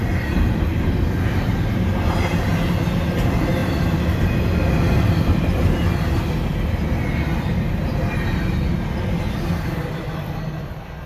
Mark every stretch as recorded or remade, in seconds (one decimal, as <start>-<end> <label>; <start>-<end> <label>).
0.0-11.1 recorded